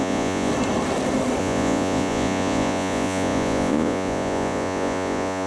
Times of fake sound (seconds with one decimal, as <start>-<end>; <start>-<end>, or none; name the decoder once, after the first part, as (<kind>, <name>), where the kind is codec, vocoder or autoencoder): 0.0-0.5 (vocoder, Vocos); 1.4-5.5